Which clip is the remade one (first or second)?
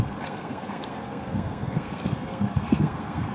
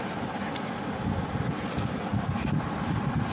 first